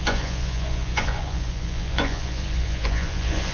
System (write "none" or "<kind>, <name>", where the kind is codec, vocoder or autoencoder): vocoder, Vocos